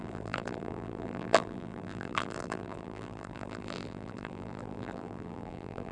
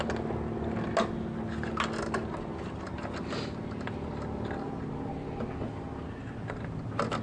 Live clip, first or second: second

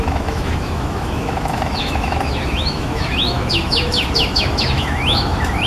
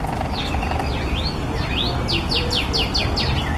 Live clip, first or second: second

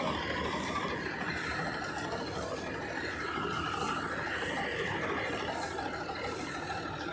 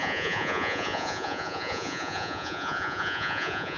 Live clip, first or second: first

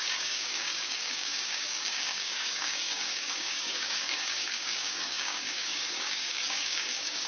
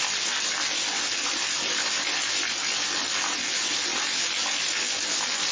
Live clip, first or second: second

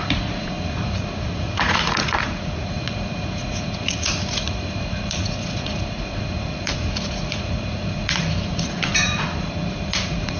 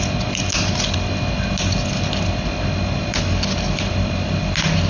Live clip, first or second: second